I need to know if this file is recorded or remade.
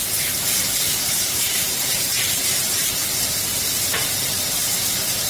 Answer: remade